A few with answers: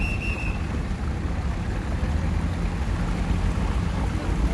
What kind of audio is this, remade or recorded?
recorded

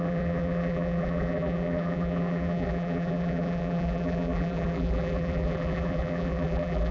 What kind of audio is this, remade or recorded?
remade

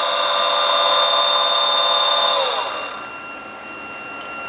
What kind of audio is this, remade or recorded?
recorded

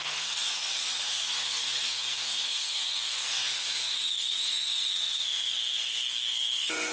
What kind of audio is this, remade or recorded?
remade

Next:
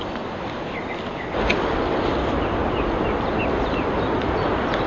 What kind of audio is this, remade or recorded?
recorded